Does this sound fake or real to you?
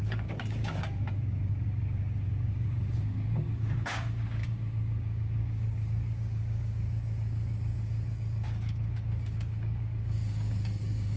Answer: fake